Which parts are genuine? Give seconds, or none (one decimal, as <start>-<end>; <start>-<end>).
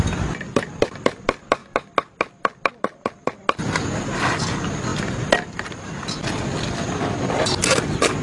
0.0-8.2